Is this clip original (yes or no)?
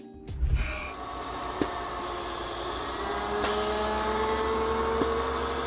yes